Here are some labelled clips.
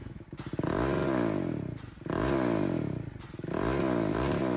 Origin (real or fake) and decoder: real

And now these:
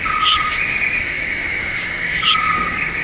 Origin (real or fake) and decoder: fake, codec, DAC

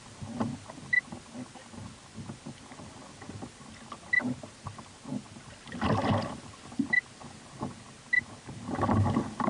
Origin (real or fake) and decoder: real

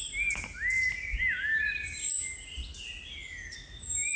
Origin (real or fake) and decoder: real